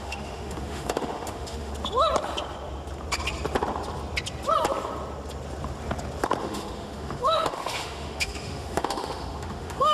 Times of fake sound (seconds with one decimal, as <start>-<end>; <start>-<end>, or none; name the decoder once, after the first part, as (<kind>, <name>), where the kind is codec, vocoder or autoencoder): 0.0-1.7 (autoencoder, DAC-VAE); 6.4-9.9